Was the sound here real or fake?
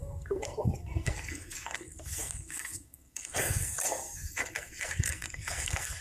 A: fake